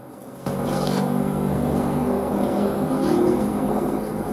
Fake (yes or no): yes